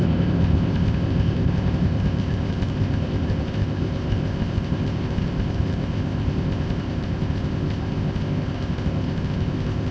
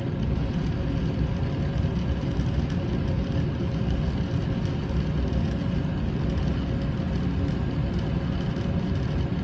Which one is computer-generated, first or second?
first